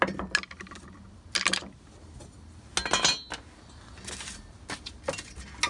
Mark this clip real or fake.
real